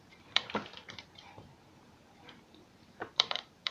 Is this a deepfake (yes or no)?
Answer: yes